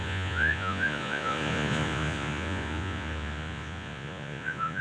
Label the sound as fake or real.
fake